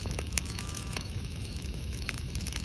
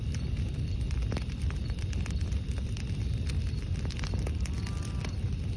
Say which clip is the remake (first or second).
first